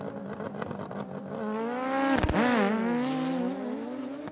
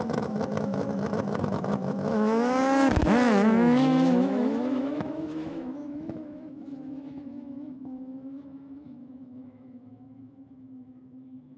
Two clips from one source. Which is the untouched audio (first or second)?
first